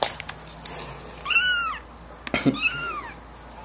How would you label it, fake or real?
real